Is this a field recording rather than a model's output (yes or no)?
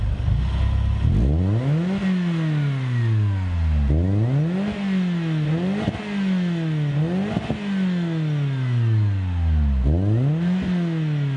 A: yes